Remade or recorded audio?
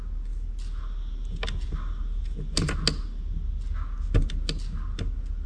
recorded